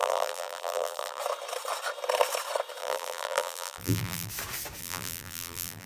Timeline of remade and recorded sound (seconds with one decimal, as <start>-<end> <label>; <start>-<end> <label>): 0.0-1.2 remade; 1.2-2.8 recorded; 2.8-4.3 remade; 4.3-4.8 recorded; 4.8-5.9 remade

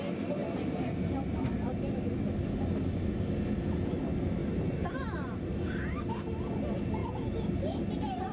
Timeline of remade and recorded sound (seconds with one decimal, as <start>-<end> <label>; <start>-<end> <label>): 0.0-0.4 recorded; 0.4-1.0 remade; 1.0-4.4 recorded; 4.4-5.7 remade; 5.7-8.3 recorded